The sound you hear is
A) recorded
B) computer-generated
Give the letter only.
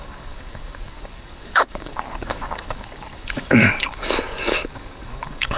B